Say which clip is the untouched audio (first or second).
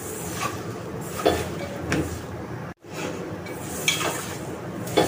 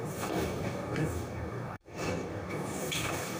first